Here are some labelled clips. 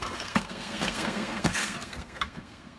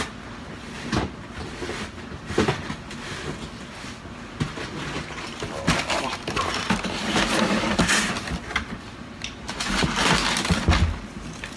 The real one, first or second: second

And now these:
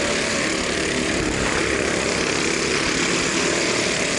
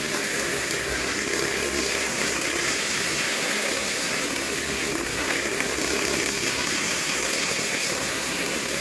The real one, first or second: first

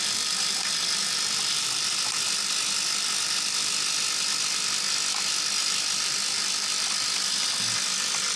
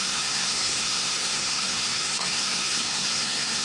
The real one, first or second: first